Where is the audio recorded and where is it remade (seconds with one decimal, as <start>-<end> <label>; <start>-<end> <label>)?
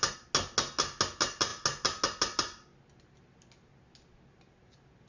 0.0-5.1 recorded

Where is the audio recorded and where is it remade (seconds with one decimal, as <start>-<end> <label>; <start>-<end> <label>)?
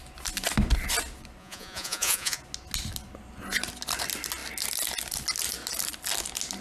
0.0-1.4 recorded; 1.4-2.4 remade; 2.4-6.6 recorded